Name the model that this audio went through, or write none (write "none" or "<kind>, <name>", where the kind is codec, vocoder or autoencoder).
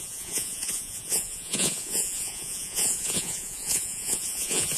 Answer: vocoder, Vocos